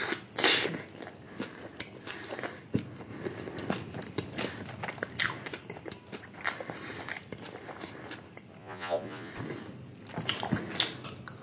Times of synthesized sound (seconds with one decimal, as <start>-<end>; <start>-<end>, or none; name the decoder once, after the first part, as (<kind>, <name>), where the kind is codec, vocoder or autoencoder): 8.6-9.3 (vocoder, Vocos)